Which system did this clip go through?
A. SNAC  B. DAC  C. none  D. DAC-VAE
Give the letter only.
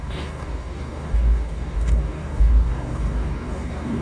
B